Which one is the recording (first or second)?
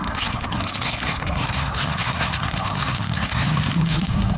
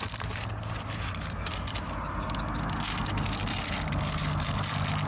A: second